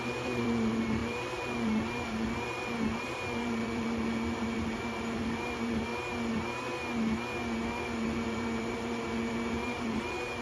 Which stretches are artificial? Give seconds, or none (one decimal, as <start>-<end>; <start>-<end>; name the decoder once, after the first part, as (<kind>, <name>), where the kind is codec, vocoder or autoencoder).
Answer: 0.0-5.9 (vocoder, BigVGAN v2); 7.8-10.4